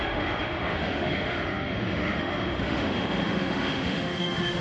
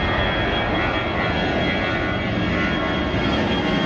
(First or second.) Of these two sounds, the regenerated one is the first